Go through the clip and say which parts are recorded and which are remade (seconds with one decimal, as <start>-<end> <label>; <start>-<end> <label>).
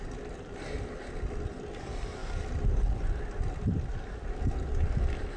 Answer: 0.0-5.4 recorded